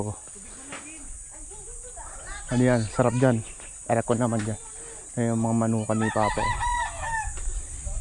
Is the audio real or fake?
real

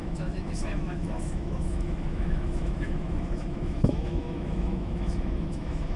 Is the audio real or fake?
fake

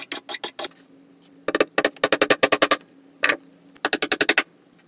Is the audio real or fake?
real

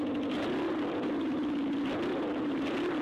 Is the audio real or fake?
real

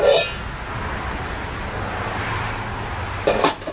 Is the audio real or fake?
real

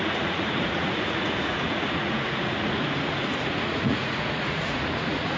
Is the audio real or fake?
fake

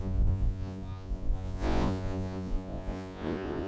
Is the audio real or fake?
fake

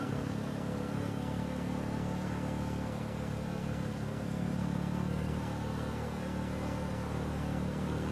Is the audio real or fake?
fake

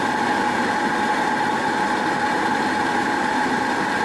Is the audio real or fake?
real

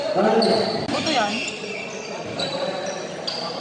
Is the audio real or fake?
real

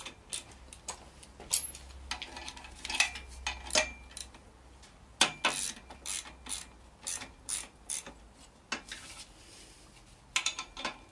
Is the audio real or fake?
real